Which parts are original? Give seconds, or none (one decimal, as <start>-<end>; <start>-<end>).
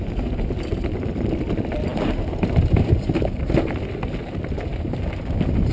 0.0-5.7